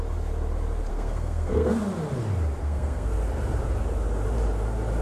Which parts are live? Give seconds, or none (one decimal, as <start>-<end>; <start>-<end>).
0.0-0.9; 1.8-2.6; 3.1-5.0